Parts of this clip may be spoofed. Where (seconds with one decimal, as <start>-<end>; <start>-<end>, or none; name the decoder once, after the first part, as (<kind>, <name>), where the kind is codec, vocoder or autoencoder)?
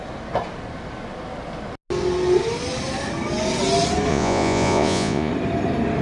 4.1-5.3 (vocoder, Vocos)